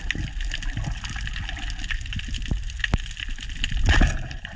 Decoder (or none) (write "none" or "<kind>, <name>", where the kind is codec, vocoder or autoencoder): none